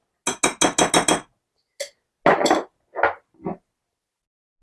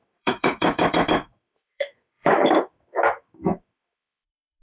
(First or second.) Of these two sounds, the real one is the first